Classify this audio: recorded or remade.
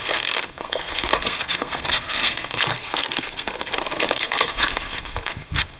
remade